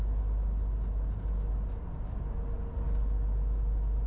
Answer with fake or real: real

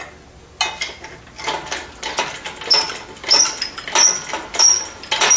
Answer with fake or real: real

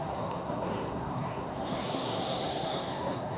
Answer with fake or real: fake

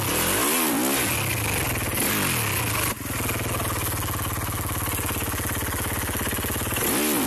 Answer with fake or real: real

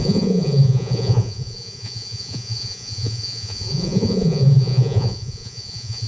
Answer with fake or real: fake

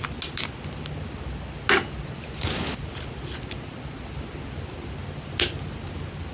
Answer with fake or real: real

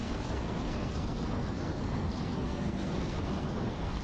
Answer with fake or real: fake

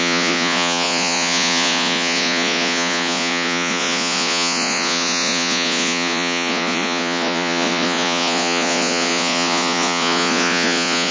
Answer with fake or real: fake